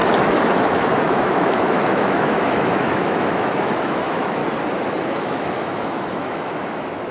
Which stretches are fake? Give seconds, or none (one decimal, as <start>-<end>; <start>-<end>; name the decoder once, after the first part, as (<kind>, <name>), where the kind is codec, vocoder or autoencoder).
0.0-4.4 (autoencoder, DAC-VAE); 5.1-7.1